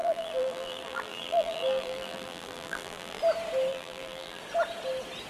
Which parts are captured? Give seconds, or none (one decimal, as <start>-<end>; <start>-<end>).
3.2-3.7; 4.4-5.3